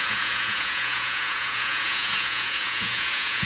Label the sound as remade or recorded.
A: remade